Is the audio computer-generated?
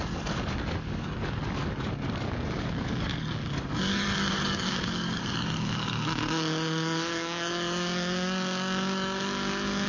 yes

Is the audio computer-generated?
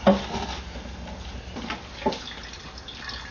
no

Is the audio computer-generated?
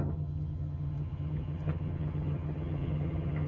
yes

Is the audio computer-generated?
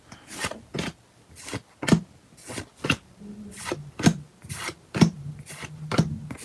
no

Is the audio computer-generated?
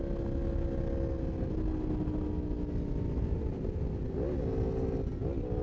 no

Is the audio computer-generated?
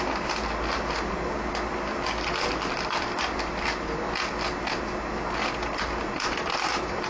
no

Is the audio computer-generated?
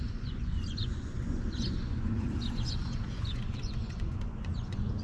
yes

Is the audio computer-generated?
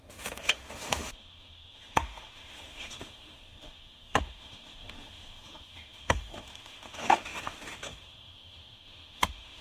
yes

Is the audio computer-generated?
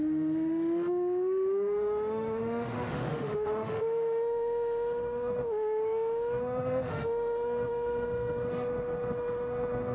yes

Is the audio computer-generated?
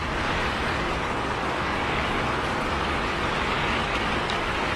yes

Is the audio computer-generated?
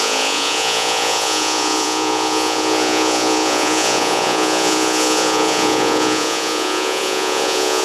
yes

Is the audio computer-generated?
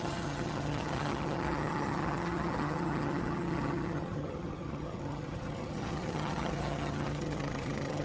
yes